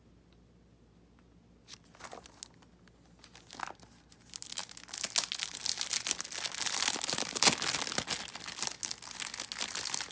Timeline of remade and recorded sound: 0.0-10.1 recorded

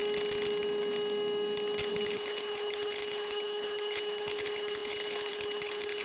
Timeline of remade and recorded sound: 0.0-1.9 recorded; 1.9-6.0 remade

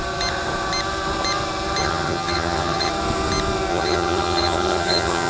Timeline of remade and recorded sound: 0.0-1.8 recorded; 1.8-2.9 remade; 2.9-3.7 recorded; 3.7-5.3 remade

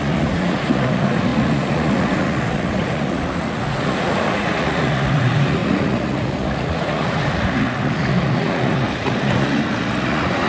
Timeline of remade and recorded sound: 0.0-10.5 remade

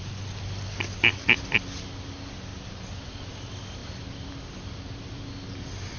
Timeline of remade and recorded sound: 0.0-6.0 recorded